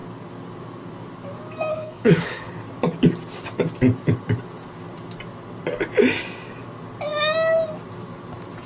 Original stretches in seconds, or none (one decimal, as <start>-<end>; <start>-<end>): 0.0-1.7; 2.5-8.7